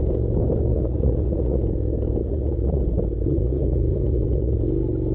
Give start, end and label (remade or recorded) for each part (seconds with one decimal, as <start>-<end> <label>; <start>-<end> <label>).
0.0-0.7 recorded; 0.7-1.6 remade; 1.6-2.2 recorded; 2.2-2.8 remade; 2.8-3.3 recorded; 3.3-4.5 remade; 4.5-5.1 recorded